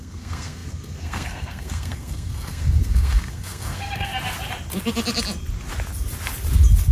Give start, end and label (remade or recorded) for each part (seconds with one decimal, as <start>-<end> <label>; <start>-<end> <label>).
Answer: 0.0-4.1 remade; 4.1-6.9 recorded